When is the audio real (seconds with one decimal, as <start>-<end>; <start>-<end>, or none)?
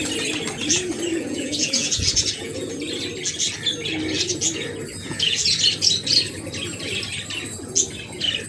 0.0-1.1; 2.7-5.0; 5.6-8.5